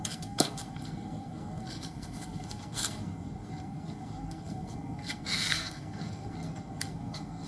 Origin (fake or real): fake